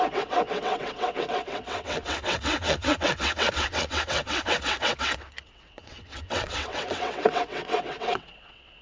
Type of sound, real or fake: fake